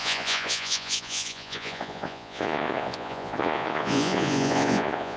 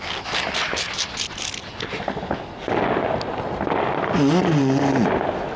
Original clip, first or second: second